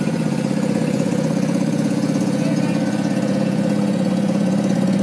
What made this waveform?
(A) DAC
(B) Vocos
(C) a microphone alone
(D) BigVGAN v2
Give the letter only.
B